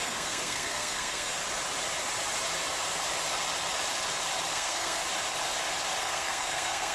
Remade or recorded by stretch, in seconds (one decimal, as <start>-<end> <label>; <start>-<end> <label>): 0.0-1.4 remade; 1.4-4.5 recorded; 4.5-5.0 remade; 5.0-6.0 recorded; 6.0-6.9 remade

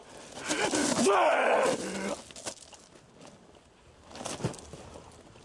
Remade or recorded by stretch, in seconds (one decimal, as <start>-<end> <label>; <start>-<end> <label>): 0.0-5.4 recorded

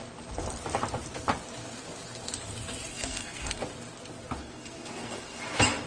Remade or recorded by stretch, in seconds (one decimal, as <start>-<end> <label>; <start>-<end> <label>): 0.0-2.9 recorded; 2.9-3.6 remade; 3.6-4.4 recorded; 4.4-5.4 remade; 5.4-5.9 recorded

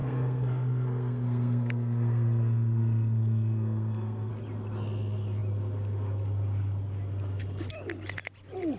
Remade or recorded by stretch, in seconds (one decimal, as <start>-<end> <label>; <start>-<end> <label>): 0.0-4.3 remade; 4.3-8.8 recorded

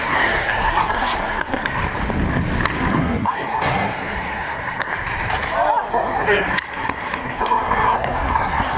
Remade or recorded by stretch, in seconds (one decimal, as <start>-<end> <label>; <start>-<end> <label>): 0.0-1.8 remade; 1.8-2.9 recorded; 2.9-4.9 remade; 4.9-5.9 recorded; 5.9-8.8 remade

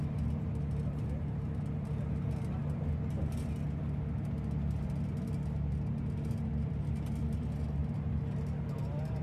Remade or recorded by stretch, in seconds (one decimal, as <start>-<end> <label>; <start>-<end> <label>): 0.0-9.2 recorded